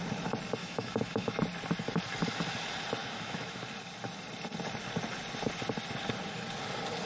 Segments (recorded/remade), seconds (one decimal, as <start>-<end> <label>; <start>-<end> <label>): 0.0-0.6 recorded; 0.6-1.4 remade; 1.4-3.0 recorded; 3.0-3.6 remade; 3.6-7.1 recorded